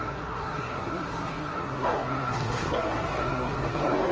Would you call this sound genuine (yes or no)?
no